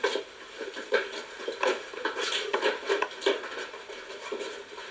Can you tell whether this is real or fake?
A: fake